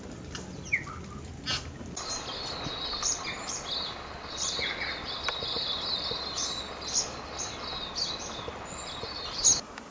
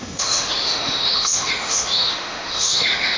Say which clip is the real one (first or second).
first